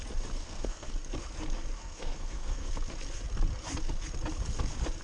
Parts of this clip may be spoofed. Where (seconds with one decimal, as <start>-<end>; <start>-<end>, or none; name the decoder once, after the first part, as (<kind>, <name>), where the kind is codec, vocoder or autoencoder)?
0.4-0.9 (codec, SNAC); 1.8-2.7